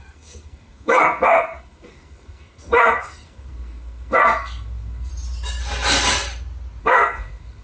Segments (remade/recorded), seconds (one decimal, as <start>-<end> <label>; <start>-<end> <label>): 0.0-5.1 remade; 5.1-6.8 recorded; 6.8-7.6 remade